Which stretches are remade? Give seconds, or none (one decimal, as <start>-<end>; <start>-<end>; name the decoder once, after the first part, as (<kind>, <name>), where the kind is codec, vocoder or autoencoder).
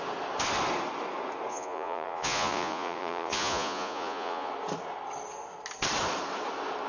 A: 1.5-4.5 (vocoder, Vocos)